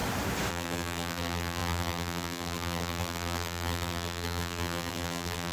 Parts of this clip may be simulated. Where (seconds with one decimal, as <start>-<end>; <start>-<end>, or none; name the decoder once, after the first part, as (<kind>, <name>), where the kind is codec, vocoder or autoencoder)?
0.5-5.5 (vocoder, BigVGAN v2)